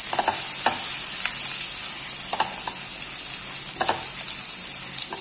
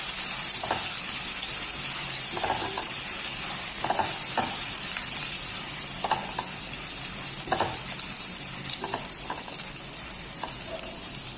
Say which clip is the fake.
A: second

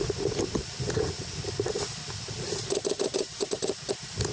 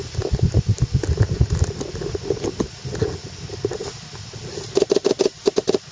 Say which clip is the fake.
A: first